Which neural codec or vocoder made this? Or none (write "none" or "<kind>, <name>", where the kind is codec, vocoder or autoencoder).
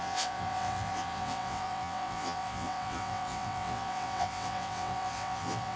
vocoder, WaveNeXt